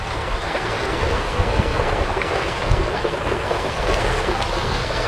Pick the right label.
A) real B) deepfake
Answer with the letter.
B